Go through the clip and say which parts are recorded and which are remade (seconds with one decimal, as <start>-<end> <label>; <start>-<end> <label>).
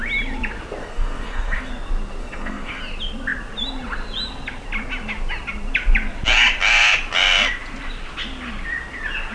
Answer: 0.0-0.8 recorded; 0.8-1.7 remade; 1.7-2.2 recorded; 2.2-2.8 remade; 2.8-9.3 recorded